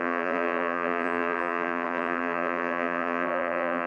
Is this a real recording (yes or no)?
no